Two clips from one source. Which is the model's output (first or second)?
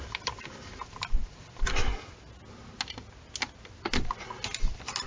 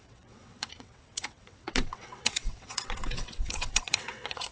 second